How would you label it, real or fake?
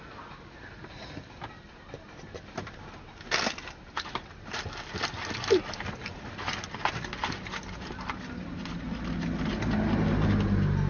real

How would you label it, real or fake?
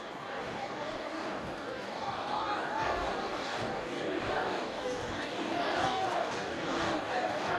fake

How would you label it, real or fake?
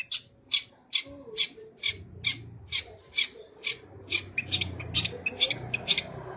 real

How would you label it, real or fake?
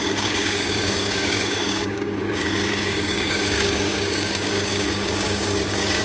fake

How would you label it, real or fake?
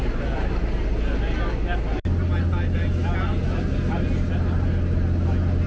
real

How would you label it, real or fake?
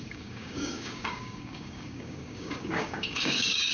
fake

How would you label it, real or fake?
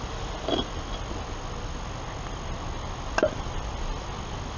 real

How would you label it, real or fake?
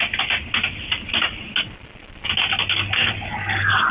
real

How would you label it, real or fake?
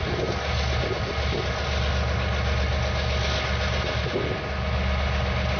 real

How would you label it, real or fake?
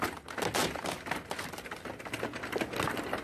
real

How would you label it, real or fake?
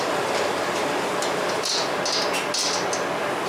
real